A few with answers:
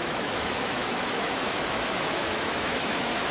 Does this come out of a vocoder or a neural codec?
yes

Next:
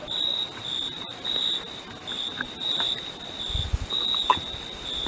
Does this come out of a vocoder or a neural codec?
no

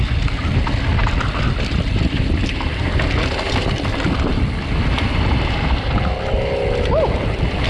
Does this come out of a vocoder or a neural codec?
no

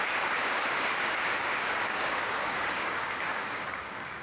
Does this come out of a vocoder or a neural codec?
yes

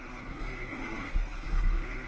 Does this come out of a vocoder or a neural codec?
yes